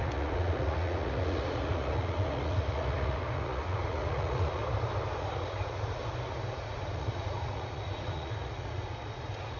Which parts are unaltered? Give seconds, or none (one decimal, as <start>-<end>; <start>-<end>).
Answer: 4.6-5.2; 6.0-6.5